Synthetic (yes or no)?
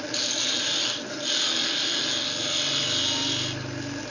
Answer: no